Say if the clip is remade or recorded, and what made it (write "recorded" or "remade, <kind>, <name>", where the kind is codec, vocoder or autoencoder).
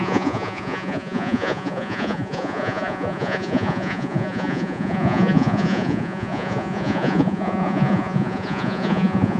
remade, vocoder, Vocos